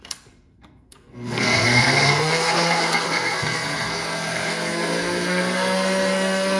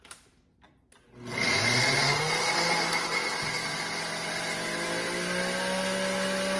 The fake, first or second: first